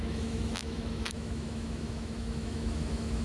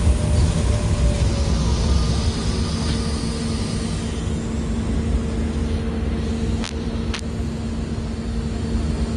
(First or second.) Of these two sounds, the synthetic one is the first